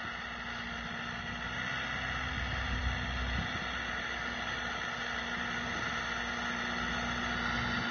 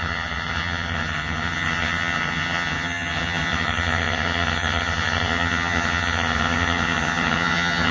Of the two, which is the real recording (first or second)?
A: first